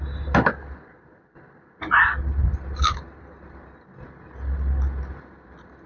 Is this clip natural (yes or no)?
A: yes